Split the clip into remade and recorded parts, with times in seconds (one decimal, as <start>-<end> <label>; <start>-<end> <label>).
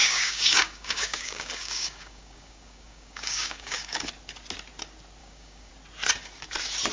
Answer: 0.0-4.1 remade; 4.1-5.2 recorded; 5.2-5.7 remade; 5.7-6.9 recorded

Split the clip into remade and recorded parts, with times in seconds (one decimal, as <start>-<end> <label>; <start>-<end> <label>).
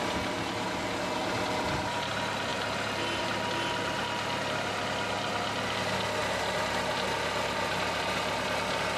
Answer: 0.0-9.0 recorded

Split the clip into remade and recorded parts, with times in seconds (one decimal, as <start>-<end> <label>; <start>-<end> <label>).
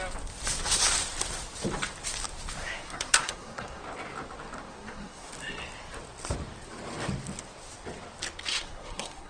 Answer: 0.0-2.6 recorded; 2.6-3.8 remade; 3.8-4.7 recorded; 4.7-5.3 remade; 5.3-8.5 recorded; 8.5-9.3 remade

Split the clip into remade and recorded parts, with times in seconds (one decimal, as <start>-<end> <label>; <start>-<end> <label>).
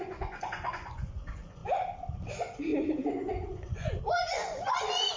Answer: 0.0-1.6 remade; 1.6-2.3 recorded; 2.3-5.2 remade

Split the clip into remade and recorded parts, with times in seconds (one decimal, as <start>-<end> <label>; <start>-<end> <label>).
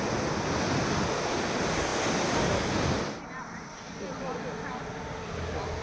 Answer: 0.0-5.8 recorded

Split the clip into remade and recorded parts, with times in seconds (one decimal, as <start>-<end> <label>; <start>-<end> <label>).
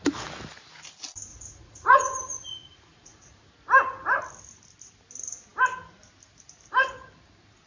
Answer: 0.0-1.3 recorded; 1.3-3.5 remade; 3.5-7.7 recorded